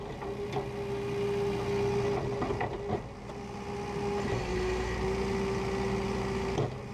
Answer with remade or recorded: recorded